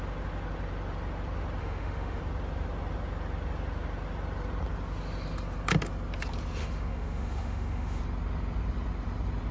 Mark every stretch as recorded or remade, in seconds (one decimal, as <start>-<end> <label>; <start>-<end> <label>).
0.0-1.6 recorded; 1.6-2.2 remade; 2.2-6.6 recorded; 6.6-8.0 remade; 8.0-9.5 recorded